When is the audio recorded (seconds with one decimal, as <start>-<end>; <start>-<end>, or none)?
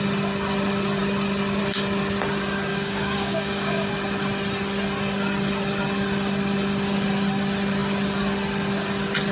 0.0-2.7; 3.9-9.3